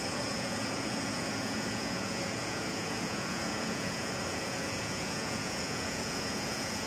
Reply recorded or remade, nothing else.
remade